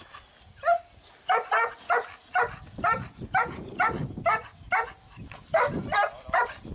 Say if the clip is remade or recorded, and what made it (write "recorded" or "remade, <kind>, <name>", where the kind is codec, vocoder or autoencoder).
recorded